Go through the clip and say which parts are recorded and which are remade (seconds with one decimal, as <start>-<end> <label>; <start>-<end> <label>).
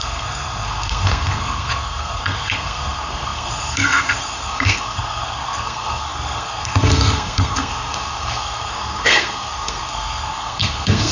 0.0-11.1 remade